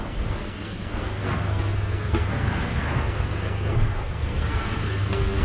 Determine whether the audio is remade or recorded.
remade